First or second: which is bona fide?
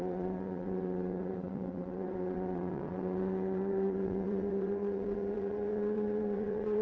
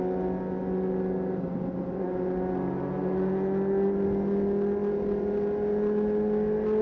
second